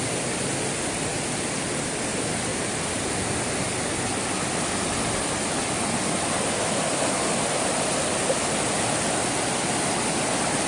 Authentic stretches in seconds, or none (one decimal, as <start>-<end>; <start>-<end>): 0.0-2.5; 3.1-10.7